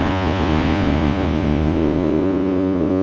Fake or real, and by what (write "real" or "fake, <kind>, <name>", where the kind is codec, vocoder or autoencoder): fake, vocoder, Vocos